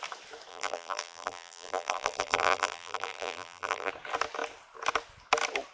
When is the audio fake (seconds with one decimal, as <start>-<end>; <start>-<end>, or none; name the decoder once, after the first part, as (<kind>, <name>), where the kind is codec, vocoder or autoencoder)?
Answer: 0.5-3.9 (vocoder, BigVGAN v2)